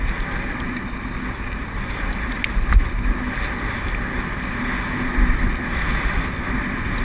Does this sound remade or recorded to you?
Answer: recorded